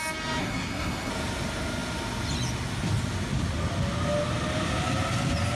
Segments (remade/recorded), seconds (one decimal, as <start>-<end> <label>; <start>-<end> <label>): 0.0-0.4 recorded; 0.4-1.1 remade; 1.1-5.6 recorded